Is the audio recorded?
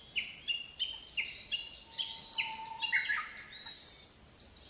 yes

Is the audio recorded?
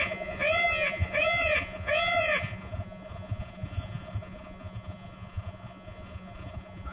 no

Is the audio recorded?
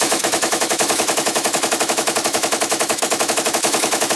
no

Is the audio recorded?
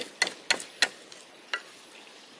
yes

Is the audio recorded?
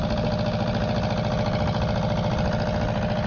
yes